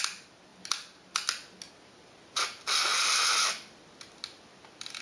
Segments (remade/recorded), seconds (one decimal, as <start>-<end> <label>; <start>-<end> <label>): 0.0-5.0 recorded